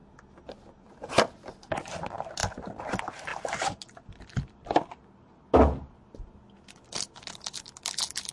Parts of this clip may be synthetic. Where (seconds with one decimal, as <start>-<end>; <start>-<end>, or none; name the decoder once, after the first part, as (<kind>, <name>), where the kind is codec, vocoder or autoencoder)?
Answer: none